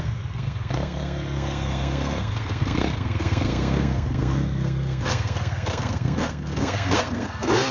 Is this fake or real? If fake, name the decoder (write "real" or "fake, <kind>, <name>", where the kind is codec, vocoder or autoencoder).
fake, codec, SNAC